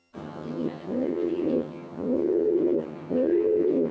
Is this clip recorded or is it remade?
remade